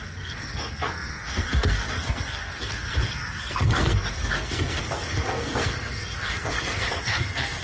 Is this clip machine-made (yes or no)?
yes